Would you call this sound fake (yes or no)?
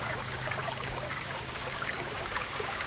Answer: yes